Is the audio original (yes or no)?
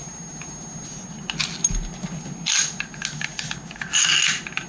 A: yes